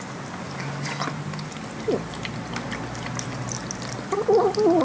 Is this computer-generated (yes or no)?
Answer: no